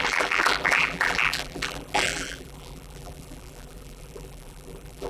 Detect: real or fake fake